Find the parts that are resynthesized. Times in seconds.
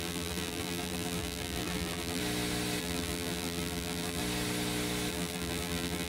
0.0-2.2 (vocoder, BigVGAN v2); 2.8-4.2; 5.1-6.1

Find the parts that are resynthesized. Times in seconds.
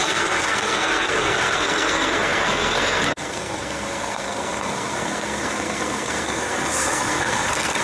0.0-7.8 (codec, SNAC)